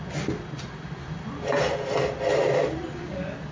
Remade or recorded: recorded